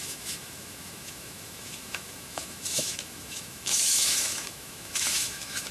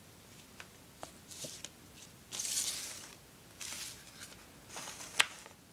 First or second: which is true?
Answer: second